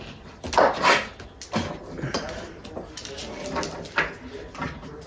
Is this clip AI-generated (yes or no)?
no